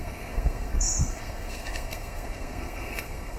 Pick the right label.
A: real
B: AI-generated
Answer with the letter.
B